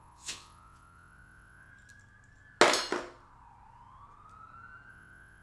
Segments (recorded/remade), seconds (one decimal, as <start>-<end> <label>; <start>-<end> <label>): 0.0-1.7 remade; 1.7-4.9 recorded; 4.9-5.4 remade